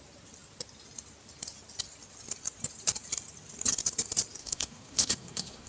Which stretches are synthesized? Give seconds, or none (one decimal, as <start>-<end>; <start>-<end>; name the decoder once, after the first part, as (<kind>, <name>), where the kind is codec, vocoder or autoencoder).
4.4-5.7 (codec, SNAC)